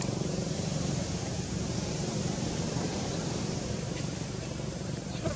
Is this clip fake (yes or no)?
yes